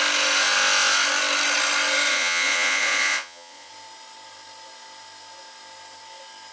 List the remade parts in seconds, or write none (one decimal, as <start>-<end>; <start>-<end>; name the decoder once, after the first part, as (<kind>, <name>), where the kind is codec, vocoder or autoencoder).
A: 2.1-3.7 (vocoder, Vocos)